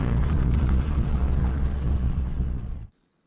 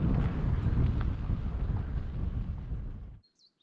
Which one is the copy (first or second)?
first